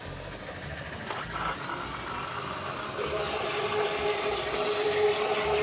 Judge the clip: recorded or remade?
recorded